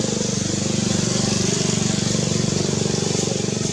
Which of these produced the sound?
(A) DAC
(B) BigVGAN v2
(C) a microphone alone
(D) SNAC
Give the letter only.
C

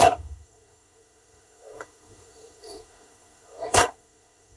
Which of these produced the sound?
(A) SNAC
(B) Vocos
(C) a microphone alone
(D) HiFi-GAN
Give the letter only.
A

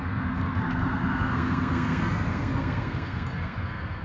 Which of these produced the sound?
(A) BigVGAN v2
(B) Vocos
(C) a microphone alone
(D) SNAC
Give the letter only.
D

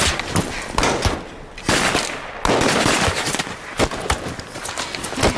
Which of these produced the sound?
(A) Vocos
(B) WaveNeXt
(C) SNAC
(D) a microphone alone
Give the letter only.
D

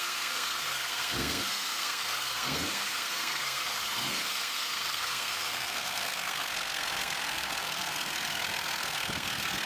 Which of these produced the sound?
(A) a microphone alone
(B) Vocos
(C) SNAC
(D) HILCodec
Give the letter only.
C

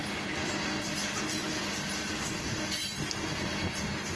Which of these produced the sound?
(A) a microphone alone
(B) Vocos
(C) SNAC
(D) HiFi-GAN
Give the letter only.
A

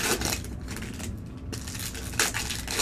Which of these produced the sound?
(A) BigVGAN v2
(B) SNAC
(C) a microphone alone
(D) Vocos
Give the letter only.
C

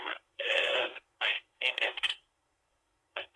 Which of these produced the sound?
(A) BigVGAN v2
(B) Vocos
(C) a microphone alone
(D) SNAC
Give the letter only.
D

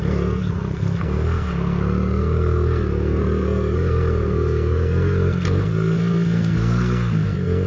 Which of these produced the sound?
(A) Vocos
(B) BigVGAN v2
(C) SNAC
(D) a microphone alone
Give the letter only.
C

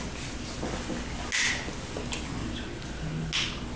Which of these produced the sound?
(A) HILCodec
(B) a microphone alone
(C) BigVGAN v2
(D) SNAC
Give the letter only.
B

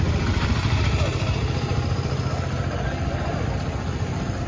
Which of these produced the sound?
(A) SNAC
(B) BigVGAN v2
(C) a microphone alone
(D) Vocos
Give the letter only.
C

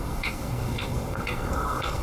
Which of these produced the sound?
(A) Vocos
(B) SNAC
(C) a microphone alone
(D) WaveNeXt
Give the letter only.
B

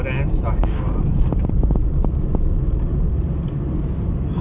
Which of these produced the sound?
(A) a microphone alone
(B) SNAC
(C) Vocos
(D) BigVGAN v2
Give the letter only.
A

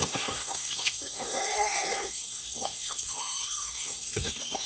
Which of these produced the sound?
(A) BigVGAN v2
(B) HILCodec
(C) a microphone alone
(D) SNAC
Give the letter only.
D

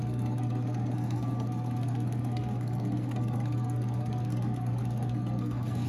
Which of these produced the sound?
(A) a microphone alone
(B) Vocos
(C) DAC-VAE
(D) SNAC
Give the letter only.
D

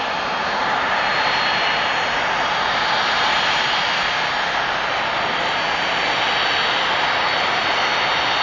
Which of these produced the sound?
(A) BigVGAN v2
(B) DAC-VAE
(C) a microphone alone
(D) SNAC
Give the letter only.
C